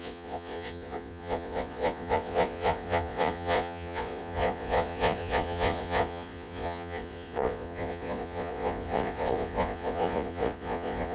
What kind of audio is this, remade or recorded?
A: remade